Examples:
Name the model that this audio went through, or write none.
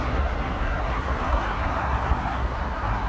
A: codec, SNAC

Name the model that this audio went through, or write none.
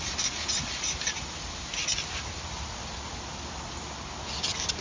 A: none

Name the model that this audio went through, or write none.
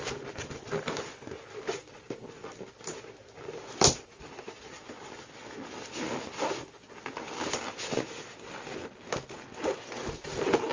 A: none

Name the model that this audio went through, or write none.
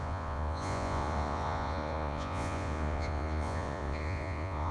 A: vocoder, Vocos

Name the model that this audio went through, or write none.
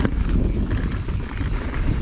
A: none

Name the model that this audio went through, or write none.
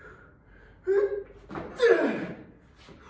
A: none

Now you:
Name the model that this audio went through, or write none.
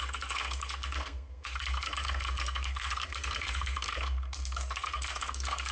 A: codec, SNAC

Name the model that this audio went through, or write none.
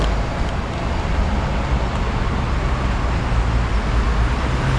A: none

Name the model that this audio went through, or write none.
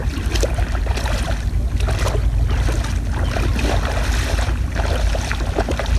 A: none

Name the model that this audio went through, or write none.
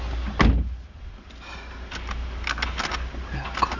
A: none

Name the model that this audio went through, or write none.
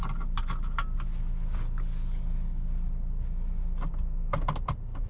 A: none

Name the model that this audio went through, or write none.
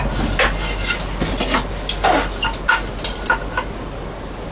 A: none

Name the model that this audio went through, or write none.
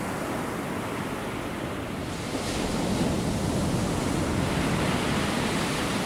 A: none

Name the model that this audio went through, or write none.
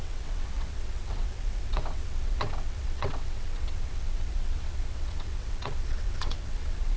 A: vocoder, WaveNeXt